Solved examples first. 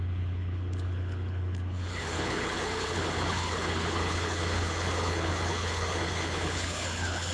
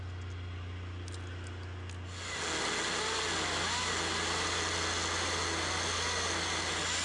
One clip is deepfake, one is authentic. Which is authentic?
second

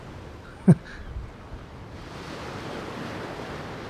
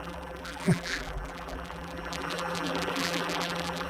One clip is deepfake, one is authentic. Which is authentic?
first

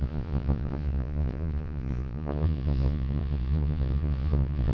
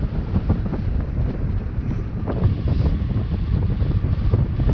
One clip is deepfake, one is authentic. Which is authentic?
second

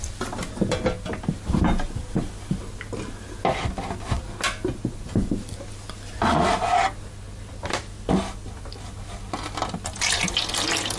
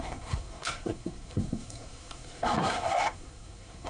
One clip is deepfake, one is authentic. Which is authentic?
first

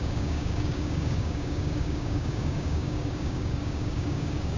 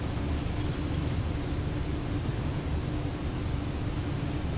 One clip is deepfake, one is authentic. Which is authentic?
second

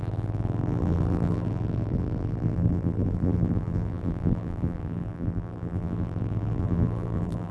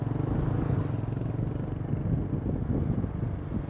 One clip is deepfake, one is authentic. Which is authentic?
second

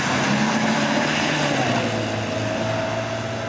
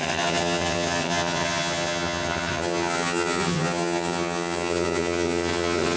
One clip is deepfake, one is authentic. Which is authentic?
first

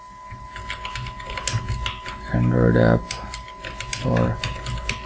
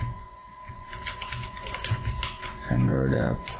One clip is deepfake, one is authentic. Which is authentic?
first